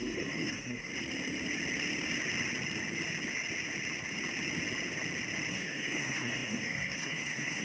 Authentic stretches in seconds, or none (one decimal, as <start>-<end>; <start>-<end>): 0.9-5.5